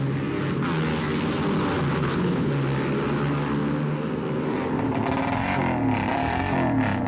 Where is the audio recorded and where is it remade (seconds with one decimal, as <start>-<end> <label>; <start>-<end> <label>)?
0.0-2.0 recorded; 2.0-2.5 remade; 2.5-7.1 recorded